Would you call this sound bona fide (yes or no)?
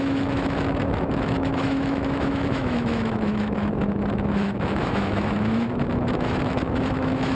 no